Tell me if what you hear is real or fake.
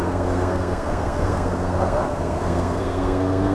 fake